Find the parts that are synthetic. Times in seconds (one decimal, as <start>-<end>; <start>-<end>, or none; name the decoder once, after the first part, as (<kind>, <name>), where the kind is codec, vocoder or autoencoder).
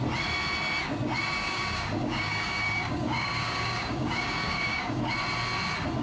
1.4-5.0 (codec, DAC)